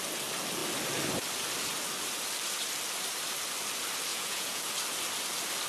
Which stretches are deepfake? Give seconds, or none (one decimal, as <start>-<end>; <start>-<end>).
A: 4.1-4.6